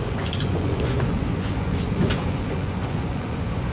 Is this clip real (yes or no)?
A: no